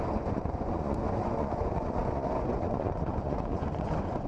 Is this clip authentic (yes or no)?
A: no